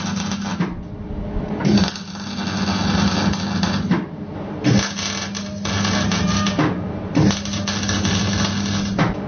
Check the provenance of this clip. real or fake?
real